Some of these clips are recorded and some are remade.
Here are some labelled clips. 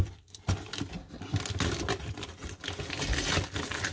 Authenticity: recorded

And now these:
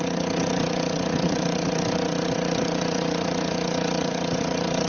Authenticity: remade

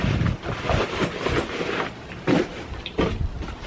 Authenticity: recorded